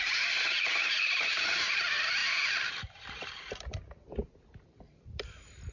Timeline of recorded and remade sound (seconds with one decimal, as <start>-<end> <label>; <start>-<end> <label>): 0.0-2.2 remade; 2.2-4.6 recorded; 4.6-5.7 remade